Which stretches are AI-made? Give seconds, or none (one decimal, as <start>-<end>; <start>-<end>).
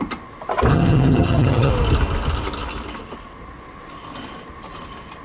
0.7-1.7